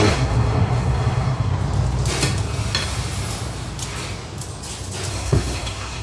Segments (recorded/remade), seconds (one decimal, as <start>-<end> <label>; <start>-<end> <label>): 0.0-1.5 remade; 1.5-5.1 recorded; 5.1-6.0 remade

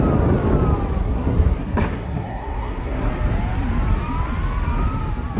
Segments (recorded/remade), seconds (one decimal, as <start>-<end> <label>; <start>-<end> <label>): 0.0-1.0 recorded; 1.0-3.1 remade; 3.1-5.4 recorded

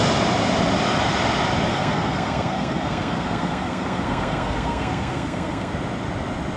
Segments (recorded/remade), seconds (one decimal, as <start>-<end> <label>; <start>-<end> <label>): 0.0-1.7 recorded; 1.7-5.7 remade; 5.7-6.6 recorded

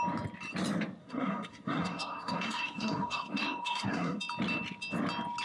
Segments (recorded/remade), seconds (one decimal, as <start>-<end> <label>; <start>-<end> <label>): 0.0-1.0 recorded; 1.0-4.2 remade; 4.2-5.4 recorded

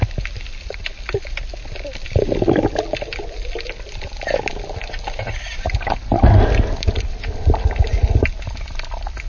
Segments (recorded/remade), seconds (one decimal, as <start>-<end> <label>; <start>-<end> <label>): 0.0-9.3 recorded

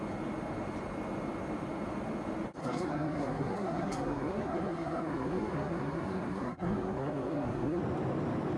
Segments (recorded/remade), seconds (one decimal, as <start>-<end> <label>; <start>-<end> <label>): 0.0-2.6 recorded; 2.6-7.8 remade; 7.8-8.6 recorded